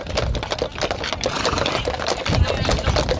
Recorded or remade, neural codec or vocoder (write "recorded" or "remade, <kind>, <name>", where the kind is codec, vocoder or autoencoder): recorded